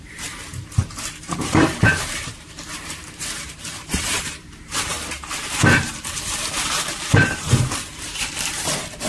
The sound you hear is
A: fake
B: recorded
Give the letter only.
A